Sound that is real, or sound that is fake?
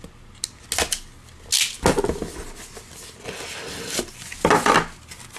real